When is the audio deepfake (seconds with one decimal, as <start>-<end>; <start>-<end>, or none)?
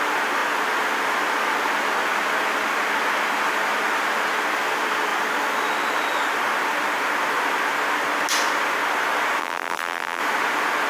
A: 9.4-10.2